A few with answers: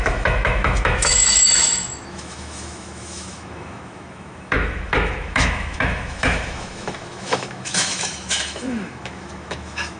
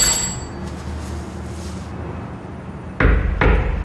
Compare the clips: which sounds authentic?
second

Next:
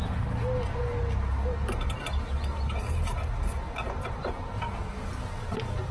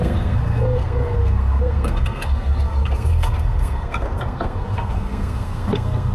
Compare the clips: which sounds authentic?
first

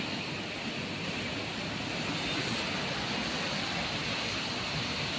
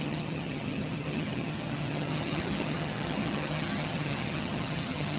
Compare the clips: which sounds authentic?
first